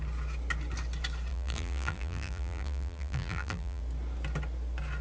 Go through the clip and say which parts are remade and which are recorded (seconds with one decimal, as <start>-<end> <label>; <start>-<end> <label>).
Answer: 0.0-1.3 recorded; 1.3-3.8 remade; 3.8-5.0 recorded